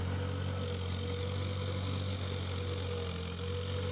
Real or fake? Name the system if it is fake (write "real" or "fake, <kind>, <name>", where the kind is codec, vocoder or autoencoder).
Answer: real